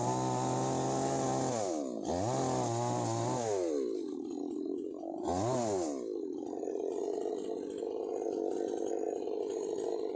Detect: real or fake real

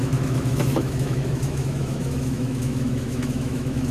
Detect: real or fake fake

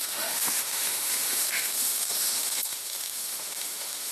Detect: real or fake fake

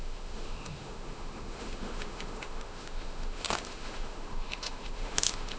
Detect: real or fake fake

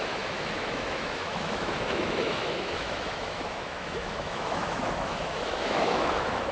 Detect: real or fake fake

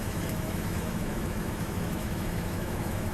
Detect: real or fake fake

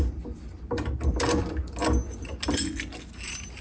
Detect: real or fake real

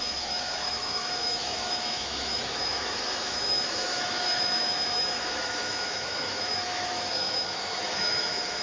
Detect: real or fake fake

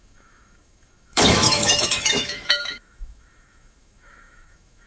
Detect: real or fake fake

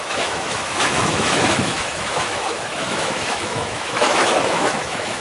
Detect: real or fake fake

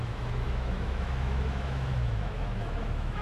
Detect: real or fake fake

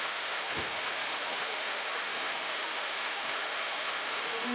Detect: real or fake fake